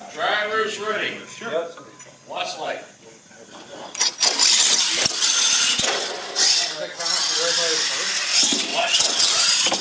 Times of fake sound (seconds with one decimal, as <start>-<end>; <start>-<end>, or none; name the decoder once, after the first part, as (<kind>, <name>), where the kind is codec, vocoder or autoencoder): 8.7-9.3 (vocoder, WaveNeXt)